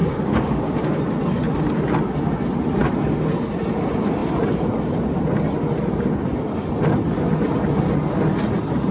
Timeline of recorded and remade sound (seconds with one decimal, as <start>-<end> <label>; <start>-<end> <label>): 0.0-1.0 remade; 1.0-8.9 recorded